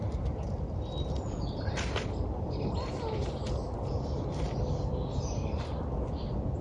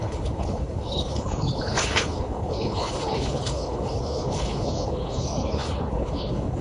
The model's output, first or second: second